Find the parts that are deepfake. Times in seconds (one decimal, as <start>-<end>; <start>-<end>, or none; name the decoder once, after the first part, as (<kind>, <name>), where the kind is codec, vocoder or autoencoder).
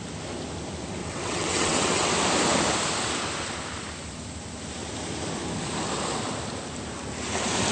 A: 1.0-2.1 (vocoder, WaveNeXt)